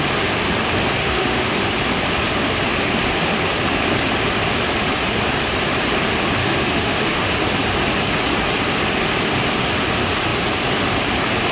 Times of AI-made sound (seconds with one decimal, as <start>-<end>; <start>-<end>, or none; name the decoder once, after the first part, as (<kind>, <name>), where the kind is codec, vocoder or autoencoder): 1.0-1.7 (autoencoder, DAC-VAE); 6.4-7.3